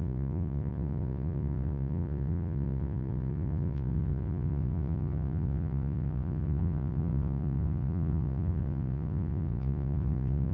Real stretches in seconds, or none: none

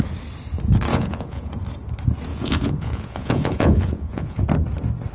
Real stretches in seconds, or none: 0.0-0.9; 1.5-2.3; 4.4-5.1

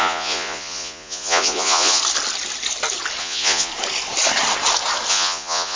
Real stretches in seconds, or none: 2.0-3.2; 3.7-5.1

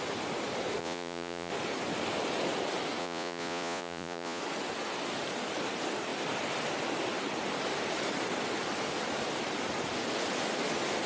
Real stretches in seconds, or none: 0.0-0.8; 1.5-3.0; 4.4-11.1